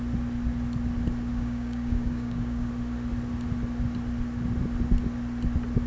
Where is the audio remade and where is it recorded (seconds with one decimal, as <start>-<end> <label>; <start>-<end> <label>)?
0.0-1.3 recorded; 1.3-2.7 remade; 2.7-5.9 recorded